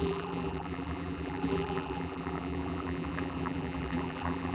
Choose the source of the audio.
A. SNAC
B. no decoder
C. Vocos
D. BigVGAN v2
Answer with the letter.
D